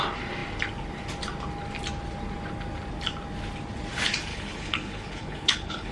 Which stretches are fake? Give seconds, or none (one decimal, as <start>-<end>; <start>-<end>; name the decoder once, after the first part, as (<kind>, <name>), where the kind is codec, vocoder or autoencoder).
4.3-5.9 (codec, HILCodec)